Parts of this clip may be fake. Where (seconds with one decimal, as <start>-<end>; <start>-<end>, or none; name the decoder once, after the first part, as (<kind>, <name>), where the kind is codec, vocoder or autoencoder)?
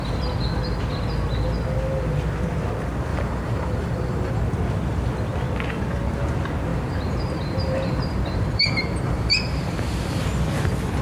3.1-4.3 (vocoder, BigVGAN v2); 6.7-10.2